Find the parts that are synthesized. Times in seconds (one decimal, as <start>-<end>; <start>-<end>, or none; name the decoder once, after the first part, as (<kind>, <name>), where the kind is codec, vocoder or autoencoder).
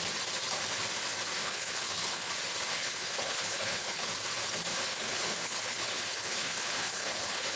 1.4-2.3 (codec, HILCodec); 2.7-4.1; 4.7-7.6